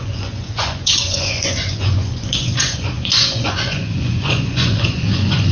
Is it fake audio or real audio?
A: fake